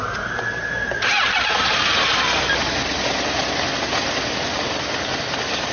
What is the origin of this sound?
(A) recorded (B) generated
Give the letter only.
A